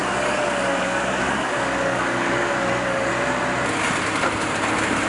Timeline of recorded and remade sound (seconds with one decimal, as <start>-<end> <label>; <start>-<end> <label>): 0.0-3.1 remade; 3.1-5.1 recorded